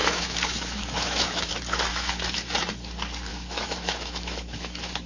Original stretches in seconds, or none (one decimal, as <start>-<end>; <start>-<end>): 1.5-1.9; 2.5-3.3